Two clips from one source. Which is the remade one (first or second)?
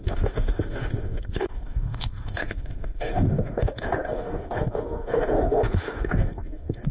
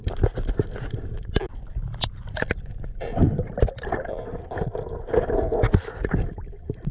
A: first